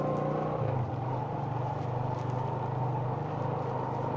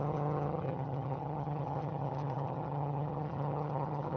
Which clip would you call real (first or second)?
first